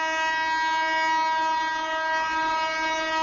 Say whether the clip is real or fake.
real